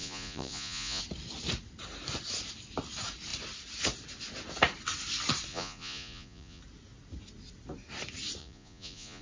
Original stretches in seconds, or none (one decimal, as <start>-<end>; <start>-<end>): 1.0-5.5; 6.6-8.4